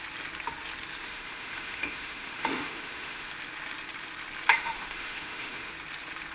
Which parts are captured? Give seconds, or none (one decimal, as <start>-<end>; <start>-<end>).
0.0-1.0; 3.3-4.5; 5.7-6.3